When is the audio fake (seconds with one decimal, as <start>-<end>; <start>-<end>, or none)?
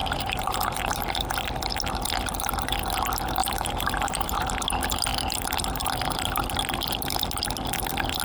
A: 0.0-1.3; 3.4-4.5